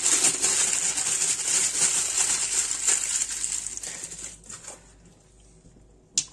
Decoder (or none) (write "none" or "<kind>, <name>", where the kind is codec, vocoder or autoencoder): none